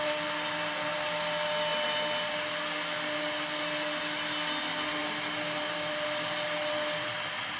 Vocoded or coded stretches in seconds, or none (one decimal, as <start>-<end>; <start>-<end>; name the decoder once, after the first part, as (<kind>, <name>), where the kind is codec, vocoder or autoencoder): none